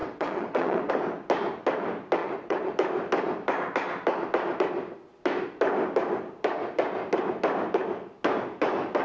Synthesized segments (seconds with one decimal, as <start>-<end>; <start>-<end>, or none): 0.0-0.9; 2.2-2.7